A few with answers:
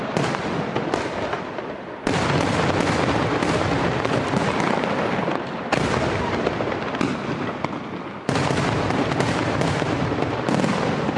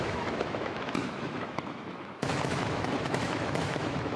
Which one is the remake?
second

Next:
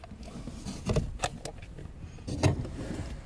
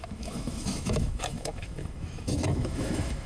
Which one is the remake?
second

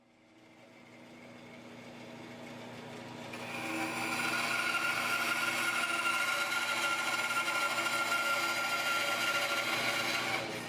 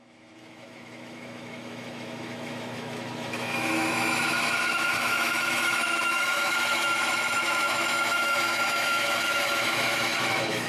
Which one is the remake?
second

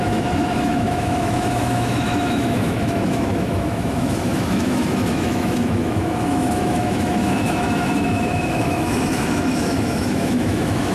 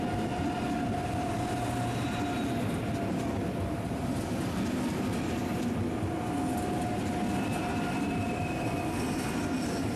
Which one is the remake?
first